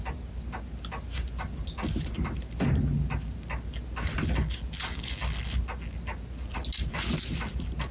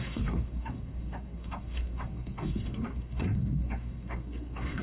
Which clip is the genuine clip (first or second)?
first